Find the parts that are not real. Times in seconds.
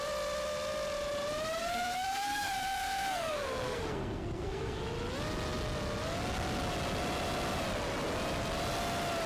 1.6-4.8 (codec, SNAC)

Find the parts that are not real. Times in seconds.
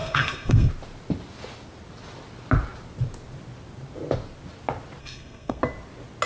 0.0-0.7 (codec, SNAC); 5.0-5.6